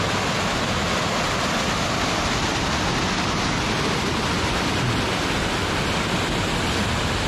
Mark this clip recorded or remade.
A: recorded